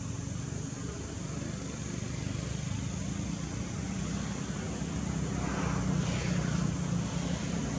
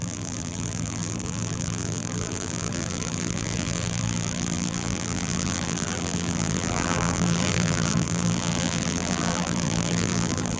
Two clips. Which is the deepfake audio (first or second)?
second